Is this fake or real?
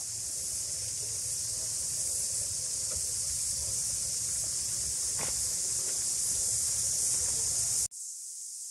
real